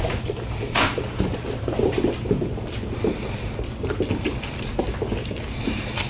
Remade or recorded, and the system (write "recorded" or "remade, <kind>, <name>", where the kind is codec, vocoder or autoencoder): recorded